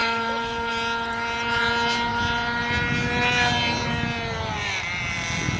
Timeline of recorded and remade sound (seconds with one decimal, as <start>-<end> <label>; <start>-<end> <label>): 0.0-0.7 remade; 0.7-5.6 recorded